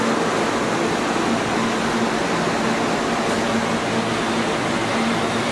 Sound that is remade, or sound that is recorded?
recorded